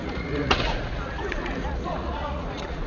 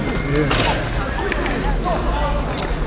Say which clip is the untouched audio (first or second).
second